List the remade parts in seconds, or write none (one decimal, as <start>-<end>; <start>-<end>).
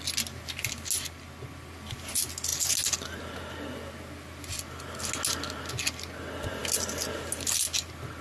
none